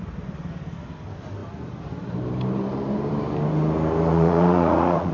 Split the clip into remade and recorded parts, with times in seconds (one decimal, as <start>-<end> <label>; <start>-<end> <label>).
0.0-4.1 recorded; 4.1-5.1 remade